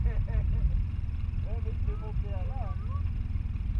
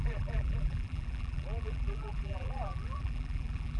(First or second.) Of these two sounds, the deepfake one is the second